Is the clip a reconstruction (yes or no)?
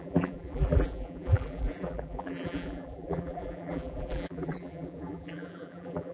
yes